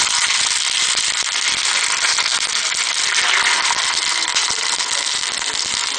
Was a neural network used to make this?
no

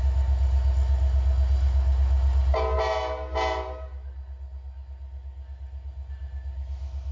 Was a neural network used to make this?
no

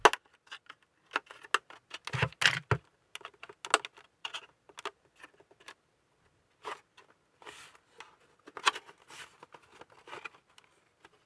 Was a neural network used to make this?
no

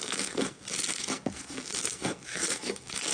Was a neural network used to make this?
yes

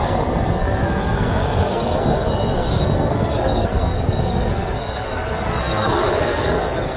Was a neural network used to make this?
yes